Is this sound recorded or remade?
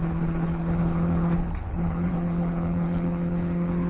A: remade